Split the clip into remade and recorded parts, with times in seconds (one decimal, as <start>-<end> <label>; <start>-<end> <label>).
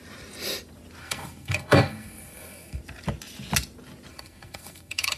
0.0-1.0 recorded; 1.0-2.8 remade; 2.8-4.1 recorded; 4.1-5.2 remade